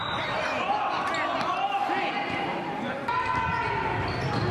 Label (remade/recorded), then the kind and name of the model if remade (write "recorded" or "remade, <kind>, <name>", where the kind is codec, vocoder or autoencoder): recorded